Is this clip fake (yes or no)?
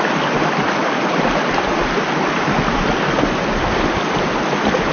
no